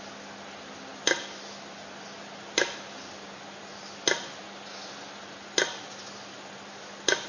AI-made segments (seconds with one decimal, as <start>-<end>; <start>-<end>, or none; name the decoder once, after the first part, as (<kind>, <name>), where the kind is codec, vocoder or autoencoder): none